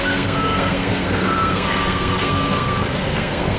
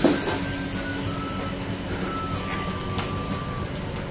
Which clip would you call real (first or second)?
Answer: second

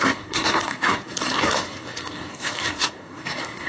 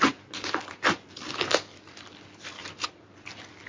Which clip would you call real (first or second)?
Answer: second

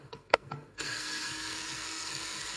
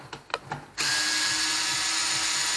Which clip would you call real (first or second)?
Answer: second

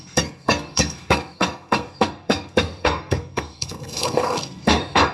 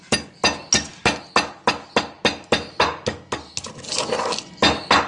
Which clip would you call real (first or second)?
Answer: second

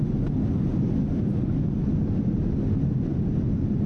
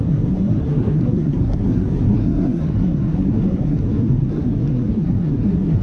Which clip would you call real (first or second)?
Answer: first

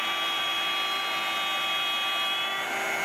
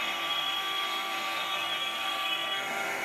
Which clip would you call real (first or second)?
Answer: first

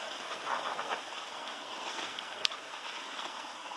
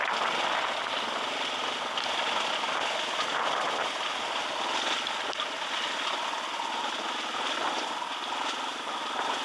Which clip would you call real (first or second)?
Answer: second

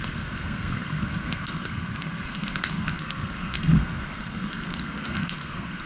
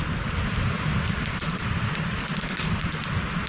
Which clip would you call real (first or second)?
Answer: second